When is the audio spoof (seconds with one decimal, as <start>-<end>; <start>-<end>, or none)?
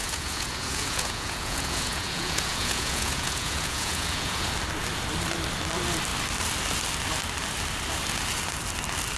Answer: 0.0-4.5